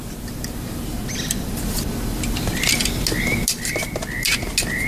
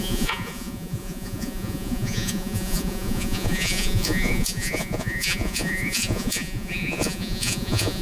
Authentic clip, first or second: first